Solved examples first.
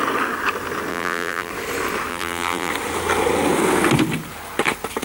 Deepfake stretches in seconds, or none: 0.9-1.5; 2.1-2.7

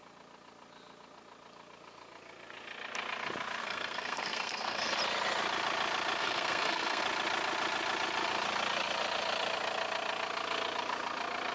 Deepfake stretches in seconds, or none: 3.6-5.0; 6.2-7.0

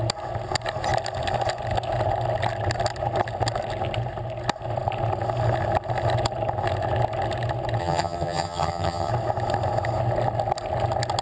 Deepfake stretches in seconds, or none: 7.8-9.1

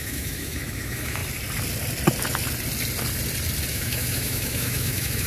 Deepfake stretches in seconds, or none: 0.0-1.2; 3.7-5.3

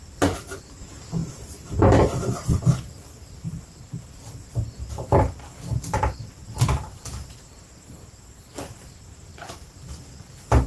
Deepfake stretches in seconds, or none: 1.2-2.6; 9.3-9.8

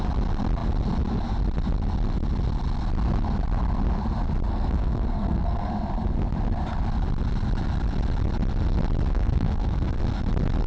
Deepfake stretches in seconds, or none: 4.5-5.7; 9.1-10.0

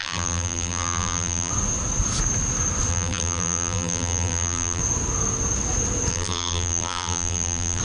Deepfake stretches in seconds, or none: 0.0-1.5; 2.9-4.8; 6.1-7.8

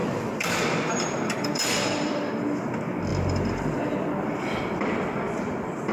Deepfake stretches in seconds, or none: 0.0-2.3; 3.1-4.8